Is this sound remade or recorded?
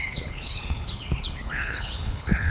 remade